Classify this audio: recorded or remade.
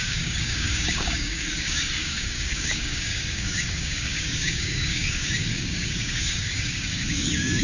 remade